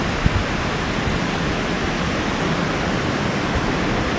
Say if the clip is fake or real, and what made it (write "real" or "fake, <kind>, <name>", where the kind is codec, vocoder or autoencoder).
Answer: real